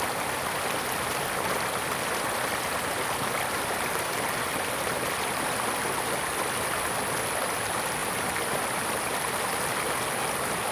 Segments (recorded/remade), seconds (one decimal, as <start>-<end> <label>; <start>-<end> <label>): 0.0-8.0 recorded; 8.0-9.7 remade; 9.7-10.7 recorded